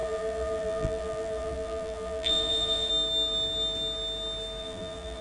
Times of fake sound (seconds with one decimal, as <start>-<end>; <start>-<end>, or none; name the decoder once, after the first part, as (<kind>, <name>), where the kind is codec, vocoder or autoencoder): 0.0-2.9 (vocoder, BigVGAN v2); 4.6-5.2